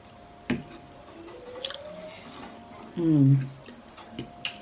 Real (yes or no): yes